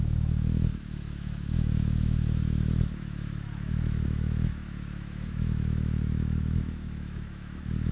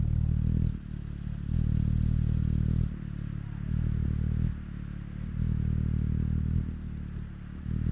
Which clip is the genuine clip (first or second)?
second